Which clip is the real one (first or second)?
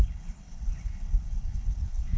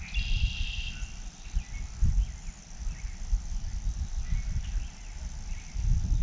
second